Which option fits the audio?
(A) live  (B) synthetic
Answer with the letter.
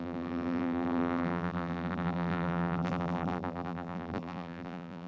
B